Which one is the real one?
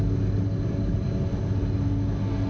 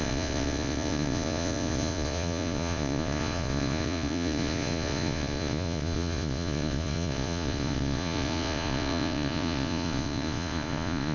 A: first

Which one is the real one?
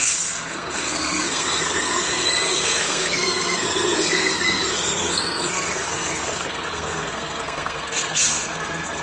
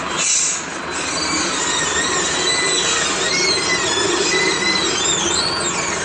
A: second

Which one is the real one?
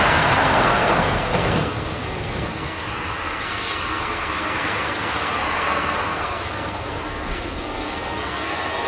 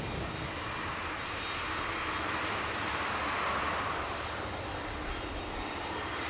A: second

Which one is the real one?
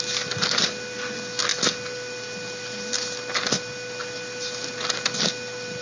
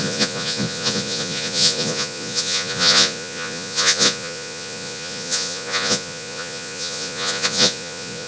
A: first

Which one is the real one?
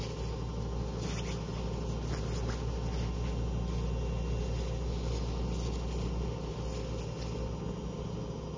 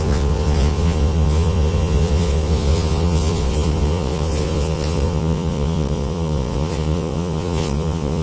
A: first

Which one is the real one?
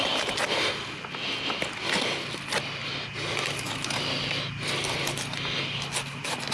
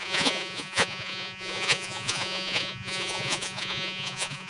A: first